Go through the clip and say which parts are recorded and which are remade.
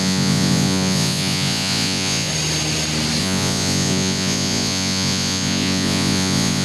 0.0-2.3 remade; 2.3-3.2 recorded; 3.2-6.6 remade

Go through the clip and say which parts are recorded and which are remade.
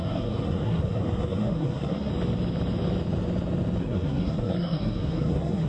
0.0-2.1 remade; 2.1-3.8 recorded; 3.8-5.7 remade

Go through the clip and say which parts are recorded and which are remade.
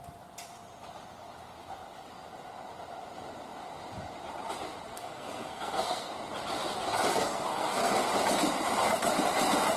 0.0-4.9 recorded; 4.9-6.1 remade; 6.1-7.1 recorded; 7.1-8.0 remade; 8.0-9.8 recorded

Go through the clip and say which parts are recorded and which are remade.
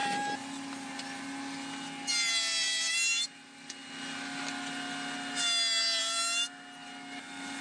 0.0-7.6 recorded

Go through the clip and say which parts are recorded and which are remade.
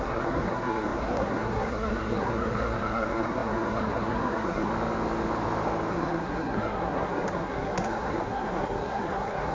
0.0-4.7 remade; 4.7-5.9 recorded; 5.9-9.5 remade